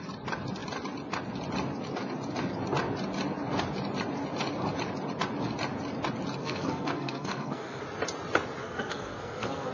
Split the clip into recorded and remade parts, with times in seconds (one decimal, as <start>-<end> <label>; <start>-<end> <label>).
0.0-6.4 recorded; 6.4-7.8 remade; 7.8-8.6 recorded; 8.6-9.7 remade